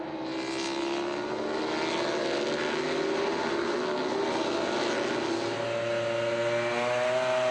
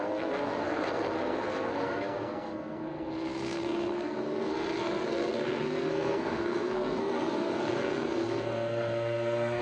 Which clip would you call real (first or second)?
first